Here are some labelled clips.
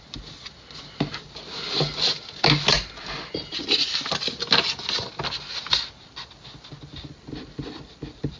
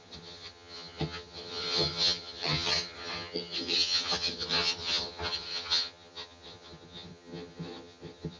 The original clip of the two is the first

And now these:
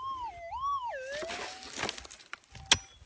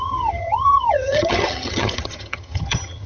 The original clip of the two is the first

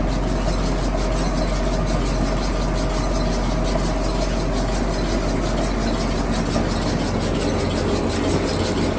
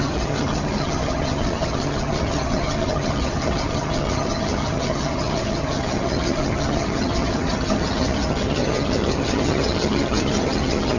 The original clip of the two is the first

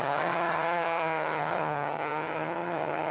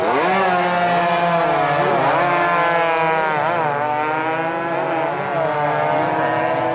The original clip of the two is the second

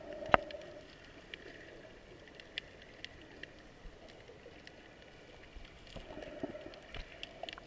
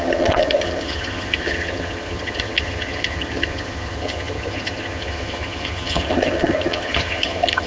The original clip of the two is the first